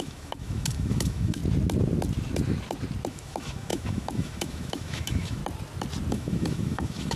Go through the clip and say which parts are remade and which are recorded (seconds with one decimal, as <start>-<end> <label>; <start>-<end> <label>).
0.0-1.4 remade; 1.4-3.1 recorded; 3.1-5.4 remade; 5.4-6.1 recorded; 6.1-7.2 remade